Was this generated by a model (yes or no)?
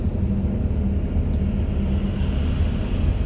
no